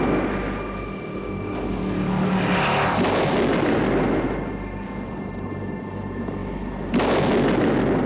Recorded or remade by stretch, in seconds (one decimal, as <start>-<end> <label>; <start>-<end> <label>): 0.0-8.1 recorded